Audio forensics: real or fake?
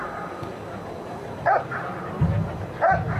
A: real